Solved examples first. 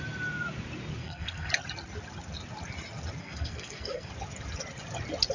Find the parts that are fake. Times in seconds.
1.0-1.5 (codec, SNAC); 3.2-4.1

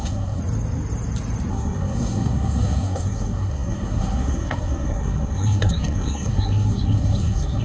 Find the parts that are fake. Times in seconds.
0.0-0.4 (codec, SNAC); 1.5-7.6

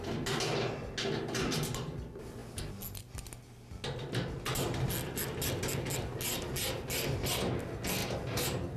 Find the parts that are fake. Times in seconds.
none

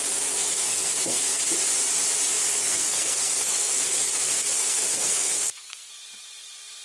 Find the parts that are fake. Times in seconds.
0.4-1.4 (codec, SNAC); 2.5-5.9

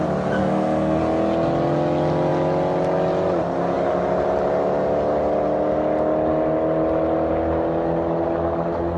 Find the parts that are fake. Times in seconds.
0.4-1.0 (codec, SNAC)

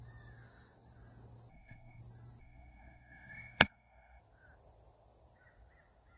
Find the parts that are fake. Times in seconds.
1.5-2.0 (codec, SNAC); 2.4-4.2